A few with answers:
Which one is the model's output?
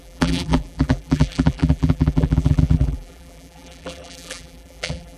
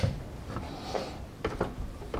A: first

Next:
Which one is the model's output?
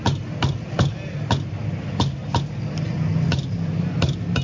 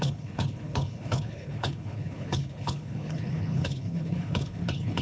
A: second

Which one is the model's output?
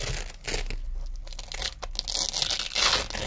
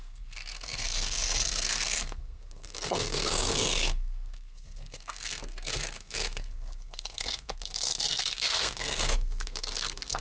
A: second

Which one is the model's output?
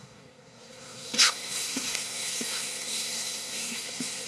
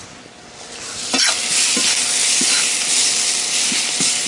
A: first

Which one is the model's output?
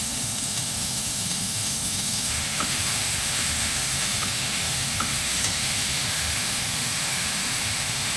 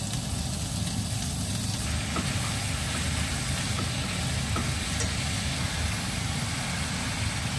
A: first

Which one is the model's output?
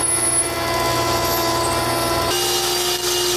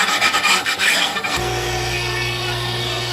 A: second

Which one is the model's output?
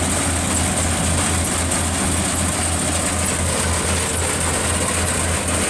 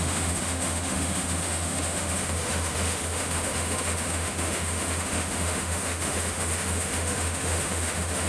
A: second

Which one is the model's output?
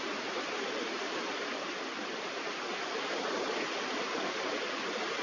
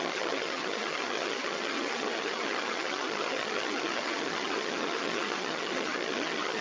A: second